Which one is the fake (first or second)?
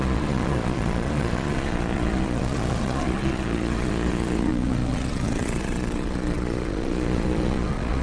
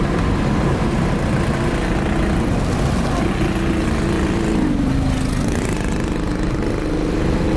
first